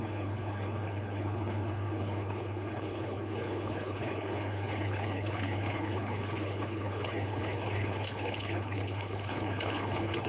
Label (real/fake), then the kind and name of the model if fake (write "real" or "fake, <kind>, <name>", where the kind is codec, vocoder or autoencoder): fake, codec, HILCodec